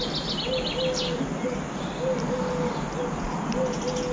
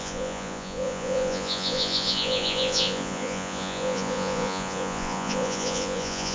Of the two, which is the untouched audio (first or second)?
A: first